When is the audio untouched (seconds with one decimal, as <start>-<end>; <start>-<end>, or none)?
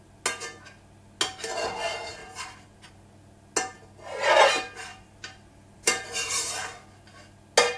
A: 0.0-2.2; 2.9-4.9; 6.3-7.8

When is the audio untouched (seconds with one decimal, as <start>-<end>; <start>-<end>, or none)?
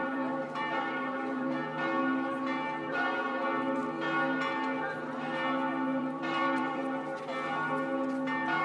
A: 1.6-2.9; 3.8-6.0; 6.8-8.6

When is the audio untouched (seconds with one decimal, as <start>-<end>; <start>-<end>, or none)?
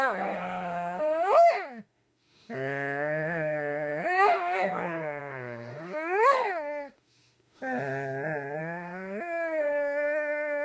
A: 7.6-8.6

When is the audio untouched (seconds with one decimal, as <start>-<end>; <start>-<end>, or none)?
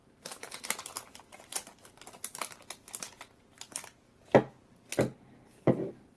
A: 0.0-6.2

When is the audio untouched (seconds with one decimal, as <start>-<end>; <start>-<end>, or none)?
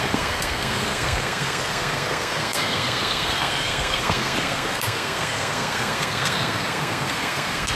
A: none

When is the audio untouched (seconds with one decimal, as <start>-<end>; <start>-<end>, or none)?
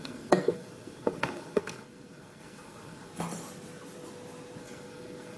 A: 3.1-4.6